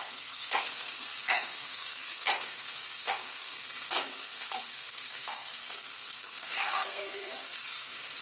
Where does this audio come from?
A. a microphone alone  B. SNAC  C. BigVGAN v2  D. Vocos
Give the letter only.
B